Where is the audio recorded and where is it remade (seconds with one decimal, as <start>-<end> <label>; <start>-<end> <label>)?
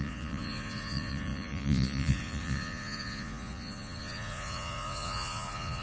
0.0-5.8 remade